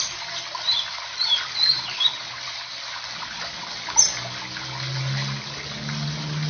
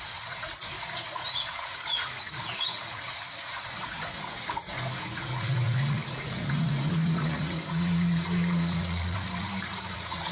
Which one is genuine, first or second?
first